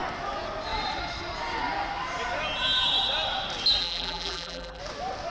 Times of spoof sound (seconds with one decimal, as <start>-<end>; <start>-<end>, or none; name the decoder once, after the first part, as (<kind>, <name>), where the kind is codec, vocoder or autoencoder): 3.8-4.8 (vocoder, BigVGAN v2)